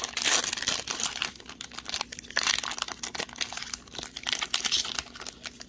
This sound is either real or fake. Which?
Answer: real